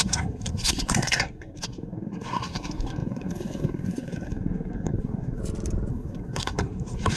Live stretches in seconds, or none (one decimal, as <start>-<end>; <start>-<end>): 5.4-5.9

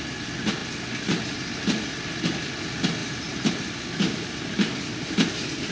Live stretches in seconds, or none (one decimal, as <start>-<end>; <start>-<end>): 0.0-3.0; 3.9-5.7

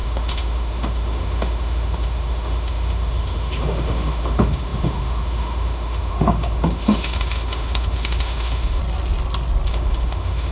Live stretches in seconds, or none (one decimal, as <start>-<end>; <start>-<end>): 8.8-9.7

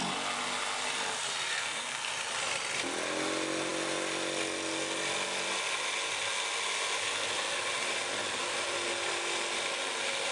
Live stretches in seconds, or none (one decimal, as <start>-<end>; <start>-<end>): 0.0-1.5; 2.1-10.3

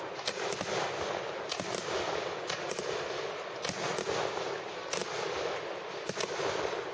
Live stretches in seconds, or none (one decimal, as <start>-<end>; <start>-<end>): 0.0-6.9